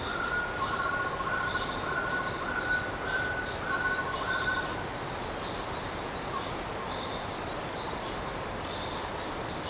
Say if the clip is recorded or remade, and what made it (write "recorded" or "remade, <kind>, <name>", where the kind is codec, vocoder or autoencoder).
recorded